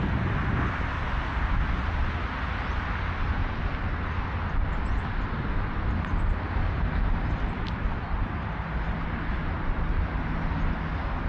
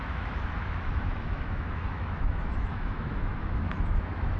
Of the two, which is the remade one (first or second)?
second